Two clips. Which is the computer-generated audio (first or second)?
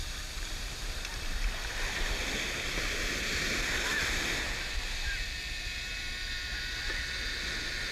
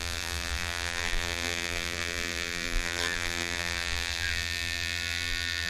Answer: second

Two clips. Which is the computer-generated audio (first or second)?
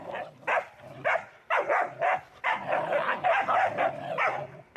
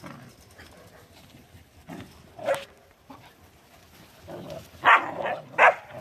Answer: first